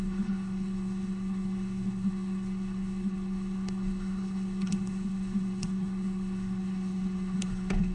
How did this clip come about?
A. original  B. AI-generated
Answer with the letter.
B